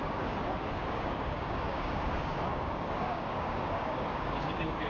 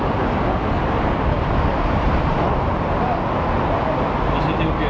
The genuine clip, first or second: second